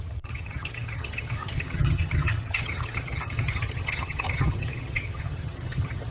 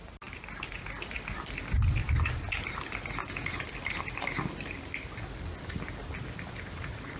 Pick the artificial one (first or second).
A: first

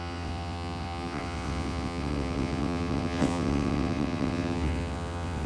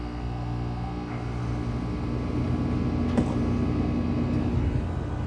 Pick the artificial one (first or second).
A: first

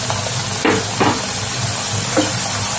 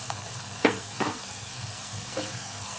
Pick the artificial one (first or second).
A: second